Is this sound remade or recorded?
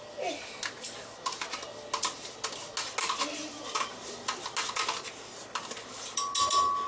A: recorded